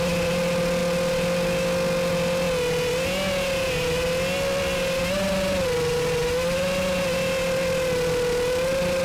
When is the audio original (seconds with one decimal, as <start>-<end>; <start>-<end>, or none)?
0.0-9.0